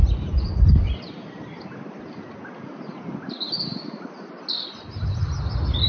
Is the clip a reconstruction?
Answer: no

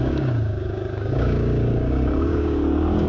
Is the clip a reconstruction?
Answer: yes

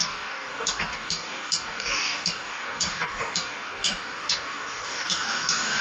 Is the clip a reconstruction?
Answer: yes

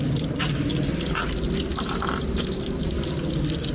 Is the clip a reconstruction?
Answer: no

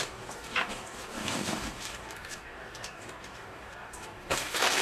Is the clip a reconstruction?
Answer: yes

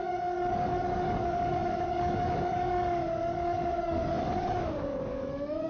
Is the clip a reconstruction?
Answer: yes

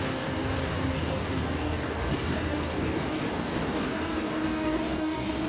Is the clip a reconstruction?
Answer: yes